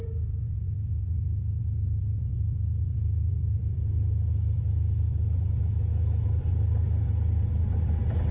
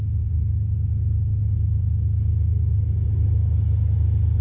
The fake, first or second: first